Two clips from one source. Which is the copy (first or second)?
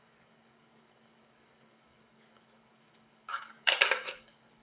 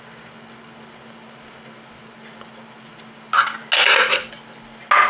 first